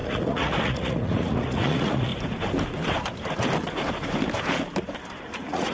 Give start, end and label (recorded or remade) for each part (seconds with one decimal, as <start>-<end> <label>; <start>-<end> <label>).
0.0-2.1 remade; 2.1-5.2 recorded; 5.2-5.7 remade